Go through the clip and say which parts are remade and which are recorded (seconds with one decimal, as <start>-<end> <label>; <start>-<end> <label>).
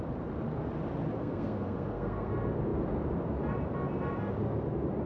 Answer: 0.0-1.2 recorded; 1.2-2.3 remade; 2.3-5.1 recorded